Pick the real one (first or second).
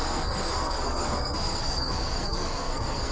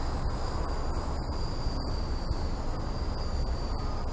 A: second